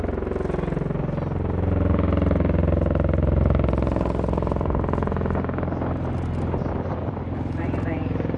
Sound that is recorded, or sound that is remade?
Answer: recorded